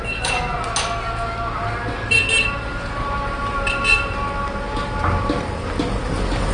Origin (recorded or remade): recorded